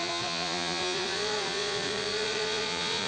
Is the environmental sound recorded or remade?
remade